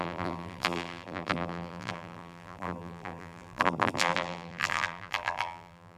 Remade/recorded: remade